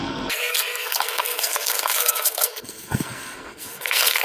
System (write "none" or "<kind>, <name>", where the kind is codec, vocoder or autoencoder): codec, SNAC